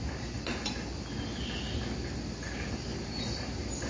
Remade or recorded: recorded